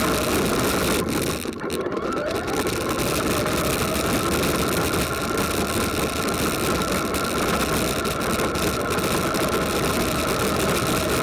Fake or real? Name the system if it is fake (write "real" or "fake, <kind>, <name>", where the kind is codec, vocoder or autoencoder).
real